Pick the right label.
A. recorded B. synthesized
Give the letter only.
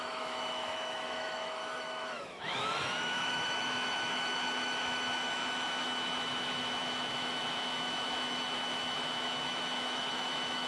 B